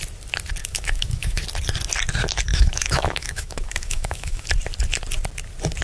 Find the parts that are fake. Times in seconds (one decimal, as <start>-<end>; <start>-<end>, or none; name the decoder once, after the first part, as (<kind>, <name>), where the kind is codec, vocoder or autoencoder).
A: 0.6-1.4 (autoencoder, DAC-VAE); 2.5-4.5